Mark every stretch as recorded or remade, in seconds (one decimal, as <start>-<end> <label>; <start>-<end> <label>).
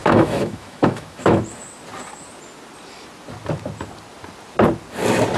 0.0-1.4 remade; 1.4-5.4 recorded